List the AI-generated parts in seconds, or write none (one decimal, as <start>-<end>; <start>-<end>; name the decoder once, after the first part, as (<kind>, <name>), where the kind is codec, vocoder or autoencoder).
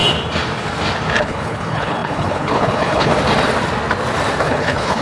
1.2-3.1 (codec, HILCodec); 4.4-5.0